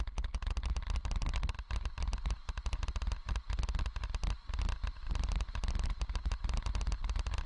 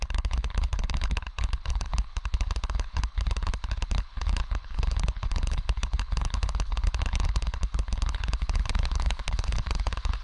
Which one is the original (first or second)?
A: first